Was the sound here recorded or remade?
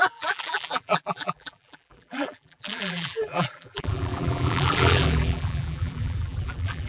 remade